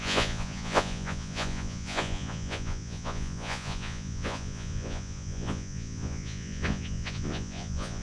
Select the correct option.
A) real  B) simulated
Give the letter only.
B